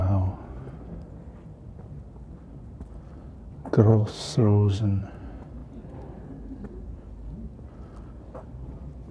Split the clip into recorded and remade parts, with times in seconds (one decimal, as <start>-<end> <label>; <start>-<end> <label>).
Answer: 0.0-3.9 recorded; 3.9-5.0 remade; 5.0-9.1 recorded

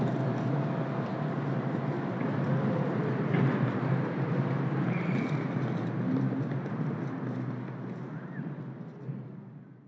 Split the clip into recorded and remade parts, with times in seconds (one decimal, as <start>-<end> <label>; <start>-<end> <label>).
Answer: 0.0-1.1 recorded; 1.1-2.2 remade; 2.2-9.9 recorded